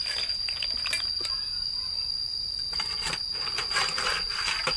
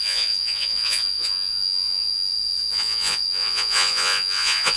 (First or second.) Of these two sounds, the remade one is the second